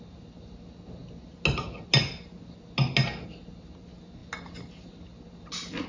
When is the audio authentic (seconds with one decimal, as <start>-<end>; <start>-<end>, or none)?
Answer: 0.0-5.9